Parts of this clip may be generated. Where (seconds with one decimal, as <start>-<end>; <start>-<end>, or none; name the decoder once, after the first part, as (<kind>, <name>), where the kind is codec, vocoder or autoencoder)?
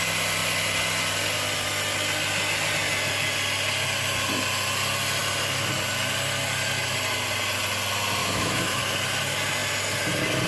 8.2-8.8 (autoencoder, DAC-VAE)